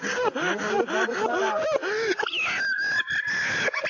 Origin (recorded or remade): recorded